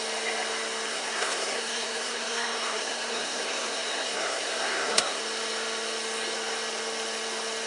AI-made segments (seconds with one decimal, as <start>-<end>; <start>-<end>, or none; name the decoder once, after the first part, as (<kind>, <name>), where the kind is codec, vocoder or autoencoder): 0.9-5.2 (codec, SNAC)